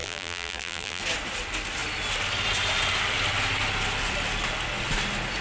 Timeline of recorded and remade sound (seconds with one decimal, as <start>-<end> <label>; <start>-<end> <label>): 0.0-1.0 remade; 1.0-5.4 recorded